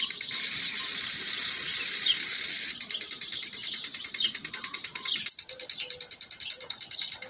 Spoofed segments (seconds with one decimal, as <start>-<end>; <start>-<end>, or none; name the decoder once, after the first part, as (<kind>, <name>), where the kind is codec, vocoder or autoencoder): 0.0-4.9 (vocoder, BigVGAN v2); 6.4-7.3